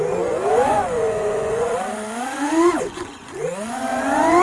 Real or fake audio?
fake